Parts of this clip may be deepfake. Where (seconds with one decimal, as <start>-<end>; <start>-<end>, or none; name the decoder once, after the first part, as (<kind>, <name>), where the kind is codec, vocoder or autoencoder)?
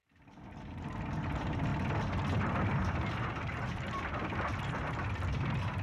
0.0-0.6 (vocoder, BigVGAN v2)